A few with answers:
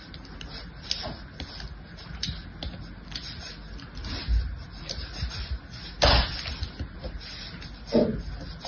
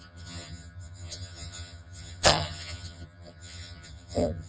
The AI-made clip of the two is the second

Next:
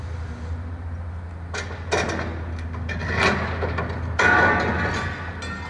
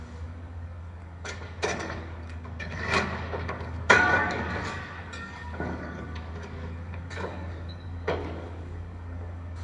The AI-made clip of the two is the second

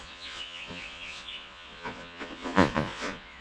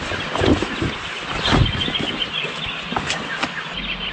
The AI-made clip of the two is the first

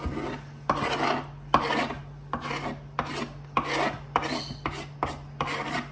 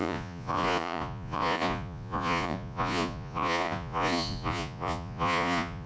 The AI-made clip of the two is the second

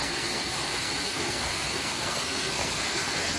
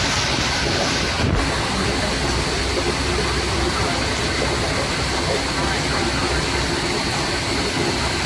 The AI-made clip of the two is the first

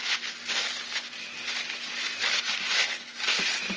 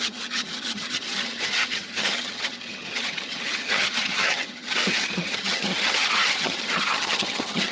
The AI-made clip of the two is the second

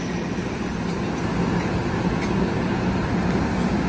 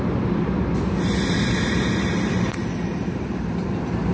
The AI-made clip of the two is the second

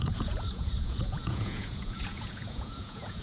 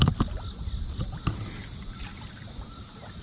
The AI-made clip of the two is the first